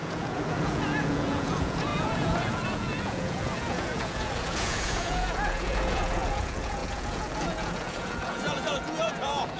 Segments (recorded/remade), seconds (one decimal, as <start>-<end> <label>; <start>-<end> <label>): 0.0-9.6 remade